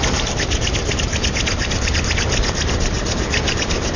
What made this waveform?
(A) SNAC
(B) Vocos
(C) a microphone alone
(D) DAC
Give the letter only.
C